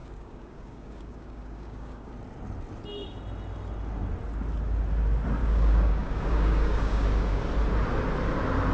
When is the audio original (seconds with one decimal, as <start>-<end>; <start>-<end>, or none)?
2.1-5.4; 7.4-8.7